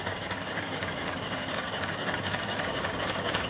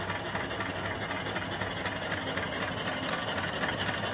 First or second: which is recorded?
second